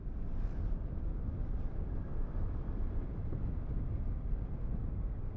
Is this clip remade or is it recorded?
recorded